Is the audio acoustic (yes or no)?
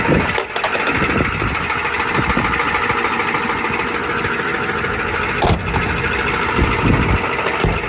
yes